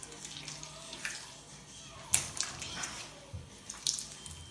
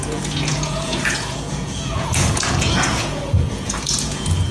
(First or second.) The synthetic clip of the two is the second